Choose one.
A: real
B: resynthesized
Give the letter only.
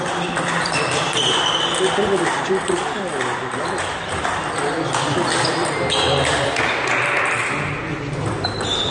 A